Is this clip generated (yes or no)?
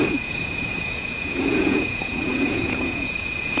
yes